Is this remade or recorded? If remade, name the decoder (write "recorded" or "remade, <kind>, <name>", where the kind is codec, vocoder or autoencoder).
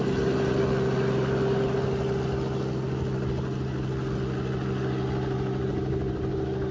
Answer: recorded